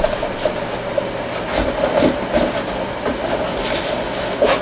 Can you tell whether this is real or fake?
real